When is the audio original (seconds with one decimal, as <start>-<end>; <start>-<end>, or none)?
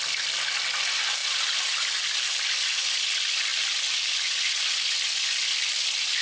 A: 0.0-6.2